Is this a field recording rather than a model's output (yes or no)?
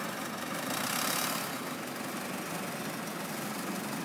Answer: yes